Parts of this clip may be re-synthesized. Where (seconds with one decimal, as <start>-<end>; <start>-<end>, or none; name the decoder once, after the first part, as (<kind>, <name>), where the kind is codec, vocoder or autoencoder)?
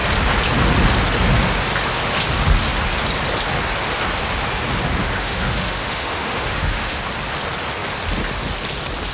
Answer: 5.0-7.0 (autoencoder, DAC-VAE)